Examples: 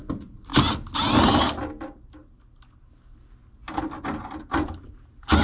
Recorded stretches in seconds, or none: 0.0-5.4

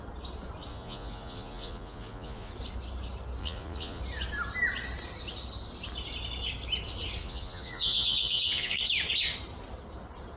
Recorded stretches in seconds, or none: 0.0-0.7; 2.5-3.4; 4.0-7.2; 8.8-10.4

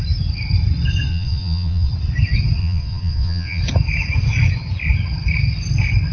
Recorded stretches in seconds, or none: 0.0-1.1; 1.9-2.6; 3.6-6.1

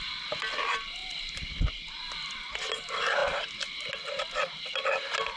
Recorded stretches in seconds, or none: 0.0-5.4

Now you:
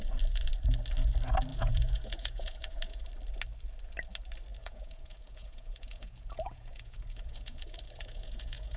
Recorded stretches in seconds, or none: 0.0-1.5; 3.1-4.5

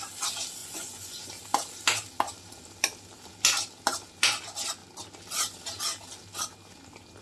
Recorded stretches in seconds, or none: 0.0-0.6; 1.3-7.2

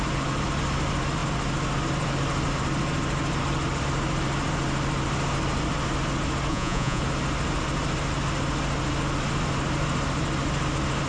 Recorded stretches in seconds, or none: 0.0-6.5; 7.0-11.1